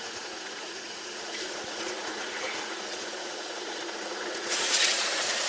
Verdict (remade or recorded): remade